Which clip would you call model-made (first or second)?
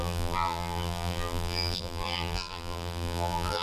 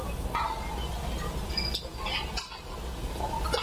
first